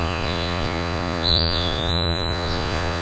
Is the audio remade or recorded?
remade